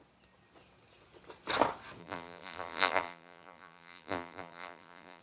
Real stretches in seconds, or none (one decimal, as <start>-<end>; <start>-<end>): 0.0-2.0

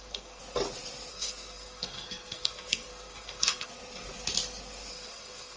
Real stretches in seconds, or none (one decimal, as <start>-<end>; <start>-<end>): 0.4-1.1; 3.7-4.9